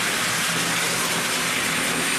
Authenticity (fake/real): real